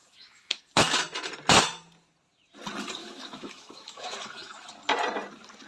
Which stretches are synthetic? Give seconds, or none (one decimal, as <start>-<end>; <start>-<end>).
0.0-0.6; 3.0-4.7